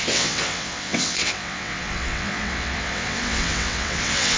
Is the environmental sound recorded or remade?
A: remade